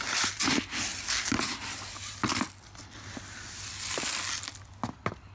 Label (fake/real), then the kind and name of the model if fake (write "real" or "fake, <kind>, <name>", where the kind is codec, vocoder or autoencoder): real